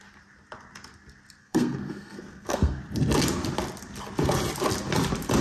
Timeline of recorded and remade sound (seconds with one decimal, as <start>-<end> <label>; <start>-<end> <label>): 0.0-1.4 recorded; 1.4-2.8 remade; 2.8-5.4 recorded